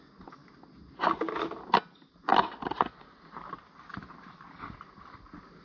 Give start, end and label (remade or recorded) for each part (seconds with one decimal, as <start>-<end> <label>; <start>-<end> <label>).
0.0-5.6 recorded